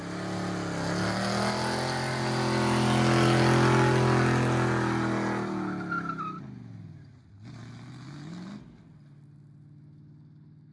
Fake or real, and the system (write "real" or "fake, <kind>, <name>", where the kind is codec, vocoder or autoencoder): real